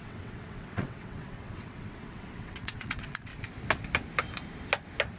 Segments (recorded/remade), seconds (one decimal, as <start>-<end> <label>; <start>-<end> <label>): 0.0-3.3 remade; 3.3-5.2 recorded